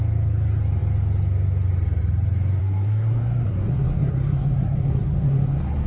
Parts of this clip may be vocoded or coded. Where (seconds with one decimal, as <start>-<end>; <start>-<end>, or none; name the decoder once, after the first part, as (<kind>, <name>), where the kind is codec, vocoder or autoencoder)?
2.6-5.9 (codec, SNAC)